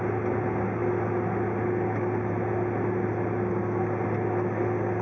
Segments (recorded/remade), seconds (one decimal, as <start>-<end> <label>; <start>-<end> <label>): 0.0-5.0 recorded